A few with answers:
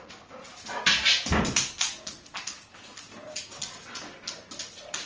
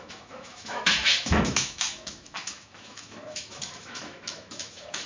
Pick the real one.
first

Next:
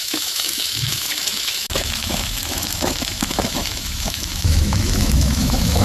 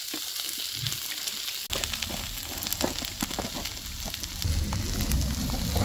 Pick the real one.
second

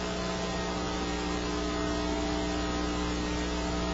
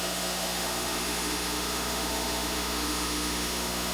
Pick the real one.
first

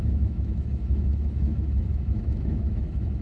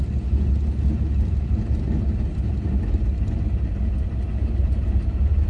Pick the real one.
second